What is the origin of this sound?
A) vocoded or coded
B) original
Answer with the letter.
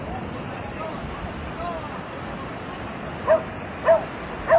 B